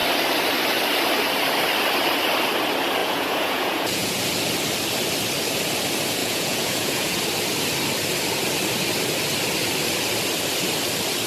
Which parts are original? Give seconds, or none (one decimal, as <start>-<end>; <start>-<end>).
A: 0.0-3.0; 4.2-6.2; 7.2-11.3